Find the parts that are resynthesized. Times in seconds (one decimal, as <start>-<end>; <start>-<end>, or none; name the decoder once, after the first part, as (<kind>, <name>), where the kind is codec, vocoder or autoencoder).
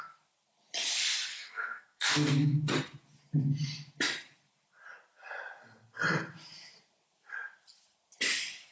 1.3-2.7 (codec, SNAC)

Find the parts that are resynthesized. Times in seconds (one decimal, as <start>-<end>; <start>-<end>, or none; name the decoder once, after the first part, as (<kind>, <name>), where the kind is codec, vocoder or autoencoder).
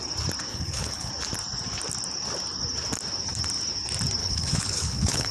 0.5-1.1 (codec, HILCodec); 4.2-5.3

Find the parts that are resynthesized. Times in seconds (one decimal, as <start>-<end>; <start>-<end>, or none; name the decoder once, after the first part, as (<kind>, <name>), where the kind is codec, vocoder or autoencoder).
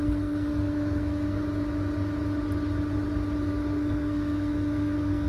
0.0-1.4 (codec, SNAC); 3.5-5.3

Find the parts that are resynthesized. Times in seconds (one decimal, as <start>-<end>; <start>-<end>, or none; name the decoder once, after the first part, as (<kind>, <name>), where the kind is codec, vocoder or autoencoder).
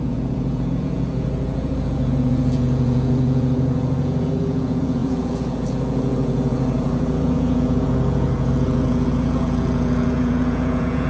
0.0-11.1 (vocoder, Vocos)